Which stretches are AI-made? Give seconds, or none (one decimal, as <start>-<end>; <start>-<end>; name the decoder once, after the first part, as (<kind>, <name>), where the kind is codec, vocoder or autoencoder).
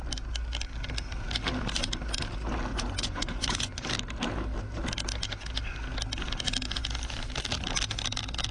2.7-3.9 (vocoder, Vocos)